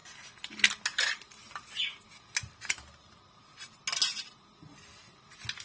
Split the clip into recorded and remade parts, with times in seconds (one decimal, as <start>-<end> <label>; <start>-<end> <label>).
0.0-5.6 recorded